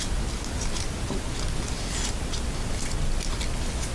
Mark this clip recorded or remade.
recorded